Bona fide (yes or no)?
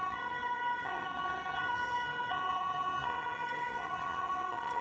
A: no